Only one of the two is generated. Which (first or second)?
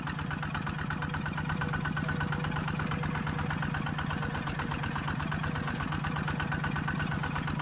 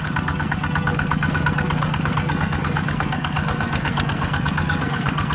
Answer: second